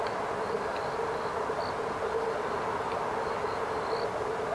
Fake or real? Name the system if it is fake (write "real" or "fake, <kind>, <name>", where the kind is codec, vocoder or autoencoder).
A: real